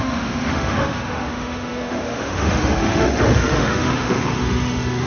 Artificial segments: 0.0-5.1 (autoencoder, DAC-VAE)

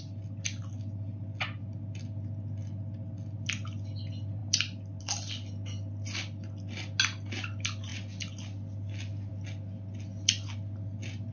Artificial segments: none

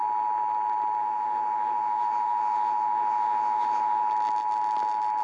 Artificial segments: 1.0-4.1 (autoencoder, DAC-VAE)

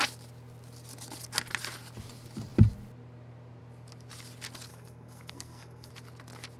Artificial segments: 4.7-5.9 (codec, SNAC)